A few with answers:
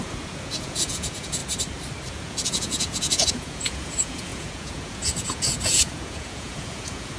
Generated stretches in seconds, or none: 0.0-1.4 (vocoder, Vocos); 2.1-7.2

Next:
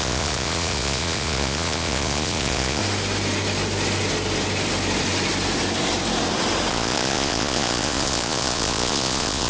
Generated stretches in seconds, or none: 0.0-2.8 (vocoder, Vocos); 6.7-9.5

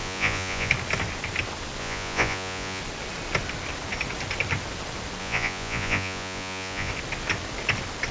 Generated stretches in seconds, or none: 0.0-0.7 (vocoder, Vocos); 1.8-2.8; 5.2-6.9

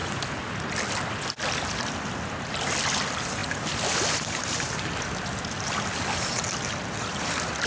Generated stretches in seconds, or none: none